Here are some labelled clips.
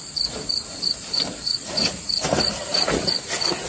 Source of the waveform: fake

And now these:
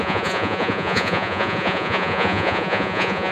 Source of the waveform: fake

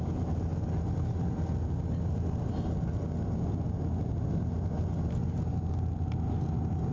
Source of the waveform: real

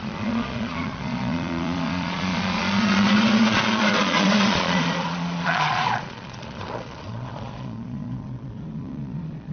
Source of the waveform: fake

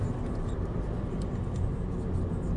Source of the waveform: real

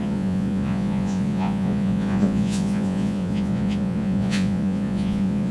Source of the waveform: fake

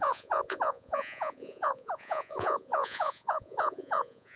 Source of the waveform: fake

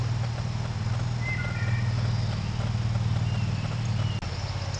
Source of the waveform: real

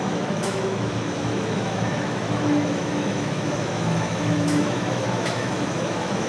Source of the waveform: fake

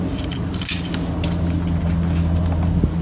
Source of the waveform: real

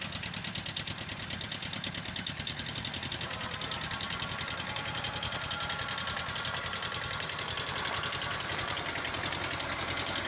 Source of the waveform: real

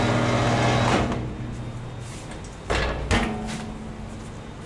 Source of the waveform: real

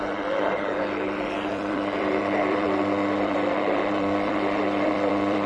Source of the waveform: fake